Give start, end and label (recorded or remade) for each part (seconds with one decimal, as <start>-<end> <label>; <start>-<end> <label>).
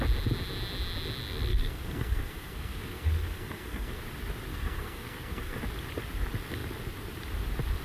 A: 0.0-1.5 recorded; 1.5-4.0 remade; 4.0-4.5 recorded; 4.5-5.6 remade; 5.6-7.8 recorded